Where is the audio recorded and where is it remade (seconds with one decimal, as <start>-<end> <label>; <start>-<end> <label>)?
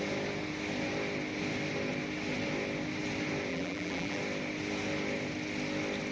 0.0-3.5 recorded; 3.5-4.2 remade; 4.2-6.1 recorded